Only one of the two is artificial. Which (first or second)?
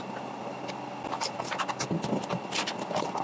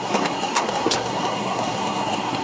second